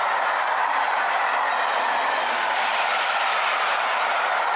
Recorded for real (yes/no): yes